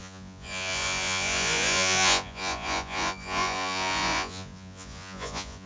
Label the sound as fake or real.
fake